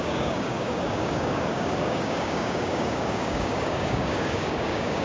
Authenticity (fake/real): fake